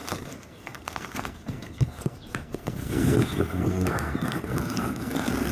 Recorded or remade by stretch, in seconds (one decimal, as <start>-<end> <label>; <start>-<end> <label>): 0.0-5.5 remade